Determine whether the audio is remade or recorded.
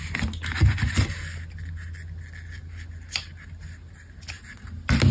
recorded